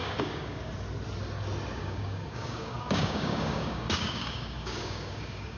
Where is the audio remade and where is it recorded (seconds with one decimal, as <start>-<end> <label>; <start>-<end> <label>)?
0.0-0.7 remade; 0.7-1.8 recorded; 1.8-5.6 remade